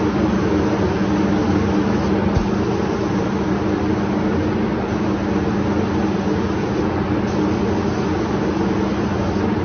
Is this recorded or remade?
recorded